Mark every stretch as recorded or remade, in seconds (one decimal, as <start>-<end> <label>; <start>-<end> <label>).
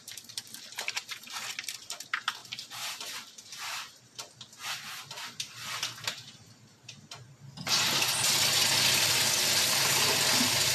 0.0-10.7 recorded